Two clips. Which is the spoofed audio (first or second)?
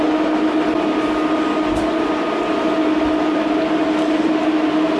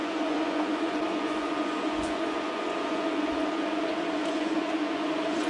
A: second